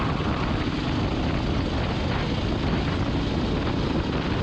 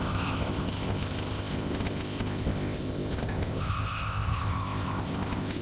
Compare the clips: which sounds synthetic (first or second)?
second